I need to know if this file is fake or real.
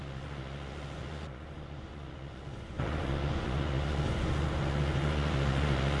fake